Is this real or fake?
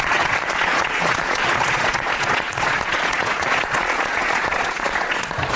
fake